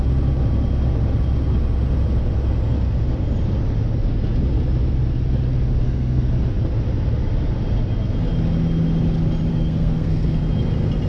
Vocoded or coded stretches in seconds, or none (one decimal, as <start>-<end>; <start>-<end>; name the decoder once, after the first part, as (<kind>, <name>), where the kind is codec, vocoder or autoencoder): 5.8-6.3 (codec, SNAC); 9.5-10.4